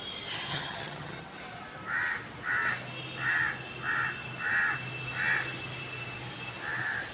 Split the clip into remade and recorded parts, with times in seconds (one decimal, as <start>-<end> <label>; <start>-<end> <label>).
0.0-0.5 recorded; 0.5-1.2 remade; 1.2-7.1 recorded

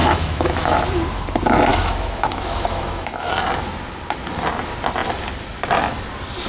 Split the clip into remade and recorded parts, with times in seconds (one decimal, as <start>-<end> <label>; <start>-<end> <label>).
0.0-0.8 remade; 0.8-1.7 recorded; 1.7-3.3 remade; 3.3-6.5 recorded

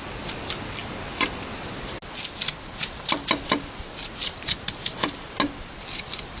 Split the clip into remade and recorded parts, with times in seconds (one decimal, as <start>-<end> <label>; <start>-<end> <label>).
0.0-6.4 recorded

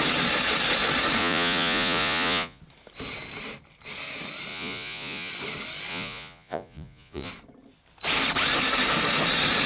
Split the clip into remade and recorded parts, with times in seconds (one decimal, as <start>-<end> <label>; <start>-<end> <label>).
0.0-1.2 recorded; 1.2-2.6 remade; 2.6-4.5 recorded; 4.5-5.3 remade; 5.3-5.9 recorded; 5.9-7.3 remade; 7.3-9.7 recorded

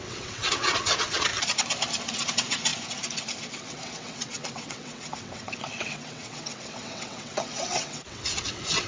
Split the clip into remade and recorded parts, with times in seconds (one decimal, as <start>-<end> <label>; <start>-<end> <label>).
0.0-1.3 remade; 1.3-2.3 recorded; 2.3-2.7 remade; 2.7-3.4 recorded; 3.4-8.9 remade

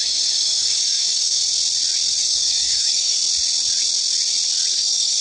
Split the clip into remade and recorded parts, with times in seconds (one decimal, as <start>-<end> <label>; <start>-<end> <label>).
0.0-1.4 remade; 1.4-2.1 recorded; 2.1-3.2 remade; 3.2-4.7 recorded; 4.7-5.2 remade

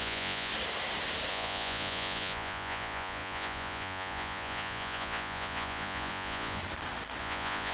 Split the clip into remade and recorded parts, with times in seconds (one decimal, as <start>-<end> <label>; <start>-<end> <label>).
0.0-0.5 remade; 0.5-1.3 recorded; 1.3-6.6 remade; 6.6-7.2 recorded; 7.2-7.7 remade

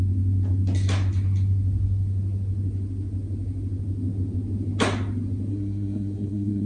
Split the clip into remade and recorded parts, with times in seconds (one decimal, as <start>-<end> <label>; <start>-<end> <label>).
0.0-5.5 recorded; 5.5-6.7 remade